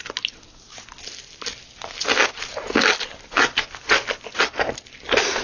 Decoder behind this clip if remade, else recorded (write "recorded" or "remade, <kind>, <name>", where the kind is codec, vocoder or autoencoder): recorded